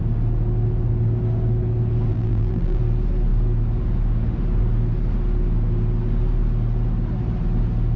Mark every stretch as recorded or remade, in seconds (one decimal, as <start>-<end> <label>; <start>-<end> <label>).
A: 0.0-2.1 recorded; 2.1-2.8 remade; 2.8-8.0 recorded